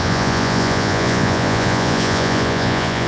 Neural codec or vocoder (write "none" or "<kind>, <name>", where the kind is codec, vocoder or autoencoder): vocoder, Vocos